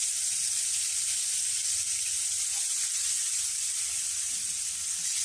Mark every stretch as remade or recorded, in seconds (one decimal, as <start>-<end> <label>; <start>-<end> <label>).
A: 0.0-5.2 recorded